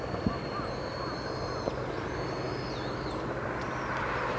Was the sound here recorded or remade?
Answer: recorded